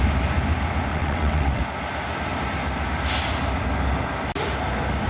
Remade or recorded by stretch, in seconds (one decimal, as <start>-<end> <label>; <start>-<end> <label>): 0.0-0.9 recorded; 0.9-1.6 remade; 1.6-5.1 recorded